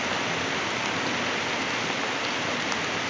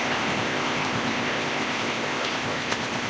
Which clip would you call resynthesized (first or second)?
second